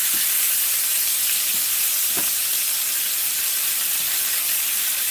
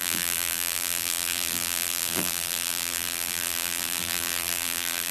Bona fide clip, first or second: first